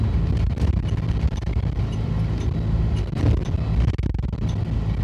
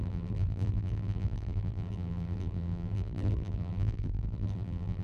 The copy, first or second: second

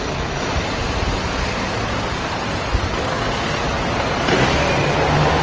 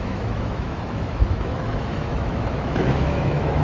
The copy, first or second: second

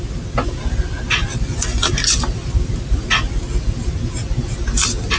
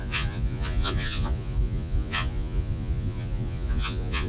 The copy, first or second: second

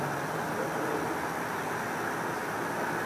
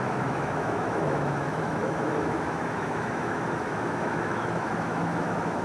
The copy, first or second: second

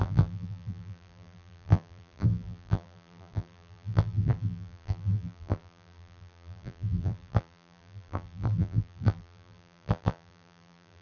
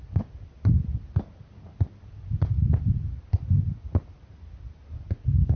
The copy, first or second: first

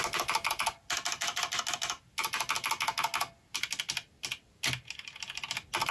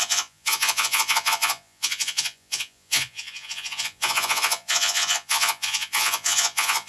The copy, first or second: second